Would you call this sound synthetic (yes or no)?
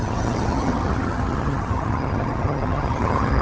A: yes